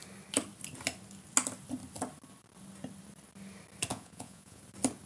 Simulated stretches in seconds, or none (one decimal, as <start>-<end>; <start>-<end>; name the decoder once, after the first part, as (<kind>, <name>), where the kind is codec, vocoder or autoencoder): 3.9-4.6 (vocoder, Vocos)